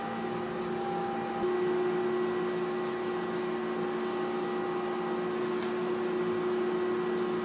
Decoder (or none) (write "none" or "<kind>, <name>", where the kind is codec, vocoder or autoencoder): none